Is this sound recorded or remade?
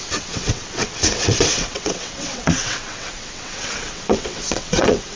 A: remade